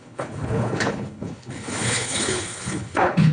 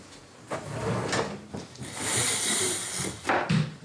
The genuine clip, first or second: second